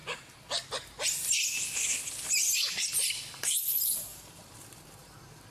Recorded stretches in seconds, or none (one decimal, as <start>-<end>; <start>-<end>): 0.0-4.1